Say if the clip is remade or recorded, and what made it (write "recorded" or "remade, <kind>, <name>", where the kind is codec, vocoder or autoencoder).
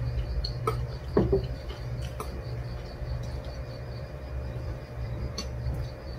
remade, vocoder, BigVGAN v2